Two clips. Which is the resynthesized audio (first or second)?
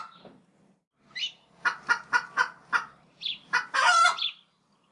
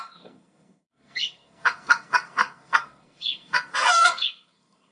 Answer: second